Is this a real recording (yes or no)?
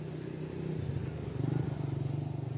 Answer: yes